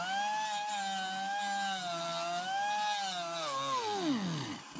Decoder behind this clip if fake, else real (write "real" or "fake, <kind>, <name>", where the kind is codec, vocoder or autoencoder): real